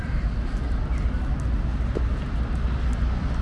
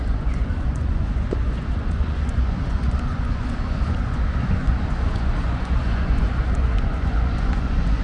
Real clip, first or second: first